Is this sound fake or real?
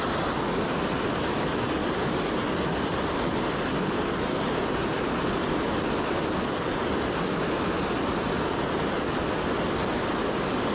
real